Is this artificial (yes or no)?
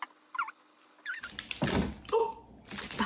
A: no